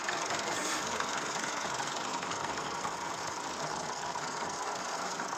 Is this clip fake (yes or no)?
yes